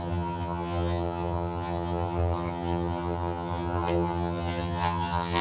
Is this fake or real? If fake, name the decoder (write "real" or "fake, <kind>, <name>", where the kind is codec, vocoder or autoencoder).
fake, vocoder, HiFi-GAN